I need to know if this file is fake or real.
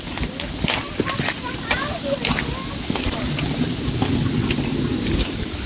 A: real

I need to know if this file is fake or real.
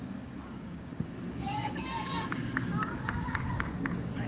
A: fake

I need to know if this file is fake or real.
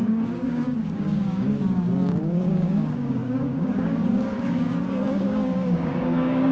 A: fake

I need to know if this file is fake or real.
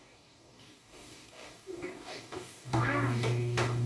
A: fake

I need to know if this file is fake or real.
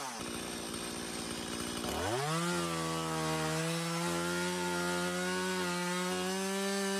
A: real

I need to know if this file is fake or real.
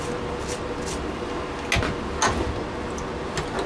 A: real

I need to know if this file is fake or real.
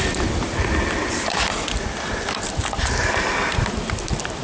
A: real